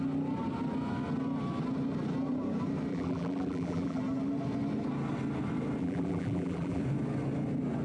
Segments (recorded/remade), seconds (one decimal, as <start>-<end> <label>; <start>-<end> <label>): 0.0-2.9 recorded; 2.9-4.0 remade; 4.0-5.8 recorded; 5.8-6.8 remade; 6.8-7.8 recorded